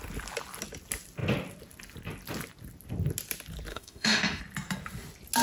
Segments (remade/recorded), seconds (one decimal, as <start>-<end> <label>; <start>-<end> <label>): 0.0-3.7 recorded; 3.7-4.4 remade; 4.4-5.4 recorded